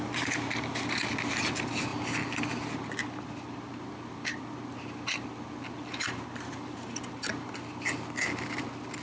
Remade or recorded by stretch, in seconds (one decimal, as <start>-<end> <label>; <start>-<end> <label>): 0.0-9.0 recorded